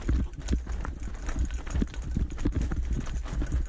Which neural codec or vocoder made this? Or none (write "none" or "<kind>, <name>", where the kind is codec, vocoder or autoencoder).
none